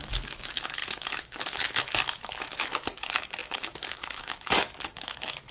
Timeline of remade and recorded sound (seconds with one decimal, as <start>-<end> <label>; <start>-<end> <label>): 0.0-5.5 remade